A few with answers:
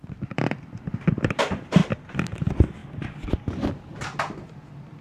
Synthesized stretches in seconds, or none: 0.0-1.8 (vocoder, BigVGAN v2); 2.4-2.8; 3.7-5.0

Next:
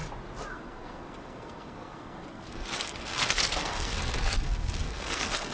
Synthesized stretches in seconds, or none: 0.5-5.5 (codec, SNAC)

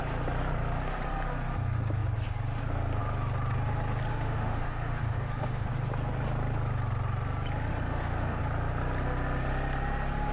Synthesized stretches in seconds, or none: 4.1-5.7 (autoencoder, DAC-VAE); 7.7-8.4

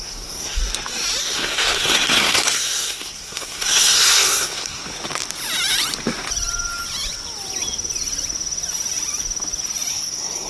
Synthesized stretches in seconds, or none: 0.0-0.6 (codec, SNAC); 1.2-4.8; 9.9-10.5